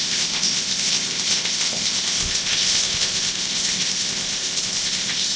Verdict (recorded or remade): remade